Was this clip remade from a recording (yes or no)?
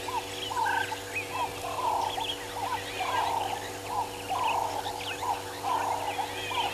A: no